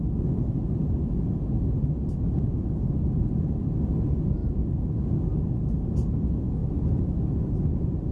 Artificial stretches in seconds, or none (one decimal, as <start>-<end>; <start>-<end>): 6.6-7.5